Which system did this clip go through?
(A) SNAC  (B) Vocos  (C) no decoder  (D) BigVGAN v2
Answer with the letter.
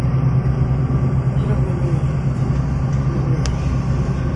C